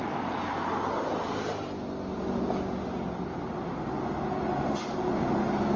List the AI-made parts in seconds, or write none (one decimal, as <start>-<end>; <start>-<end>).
none

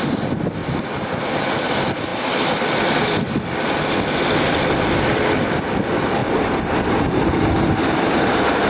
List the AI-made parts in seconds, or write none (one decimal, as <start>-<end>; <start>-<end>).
6.2-8.2